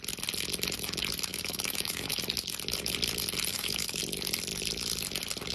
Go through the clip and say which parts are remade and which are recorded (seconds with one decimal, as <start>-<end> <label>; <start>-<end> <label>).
0.0-1.3 recorded; 1.3-2.1 remade; 2.1-3.5 recorded; 3.5-4.0 remade; 4.0-5.5 recorded